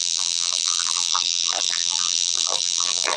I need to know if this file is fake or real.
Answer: fake